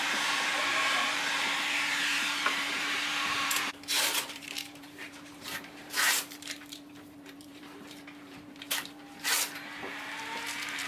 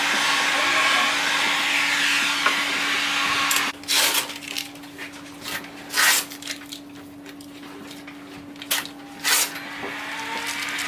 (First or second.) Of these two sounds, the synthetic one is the first